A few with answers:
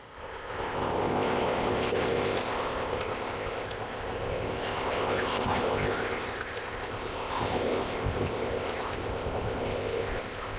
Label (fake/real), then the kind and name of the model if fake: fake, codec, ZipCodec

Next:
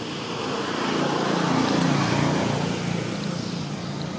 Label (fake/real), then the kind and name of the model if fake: real